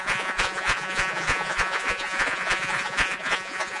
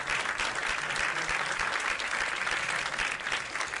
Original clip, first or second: second